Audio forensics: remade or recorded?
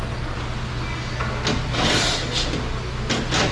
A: recorded